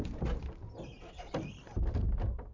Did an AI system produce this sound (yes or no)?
no